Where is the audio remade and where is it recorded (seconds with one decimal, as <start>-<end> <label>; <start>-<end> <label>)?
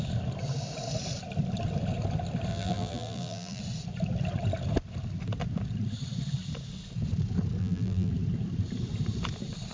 0.0-2.5 recorded; 2.5-3.6 remade; 3.6-7.6 recorded; 7.6-8.1 remade; 8.1-9.7 recorded